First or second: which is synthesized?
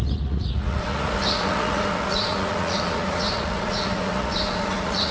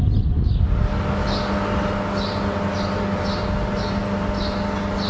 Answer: first